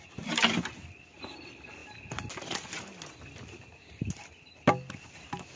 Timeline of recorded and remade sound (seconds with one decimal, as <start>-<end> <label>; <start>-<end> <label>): 0.0-5.6 recorded